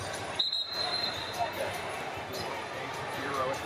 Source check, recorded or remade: remade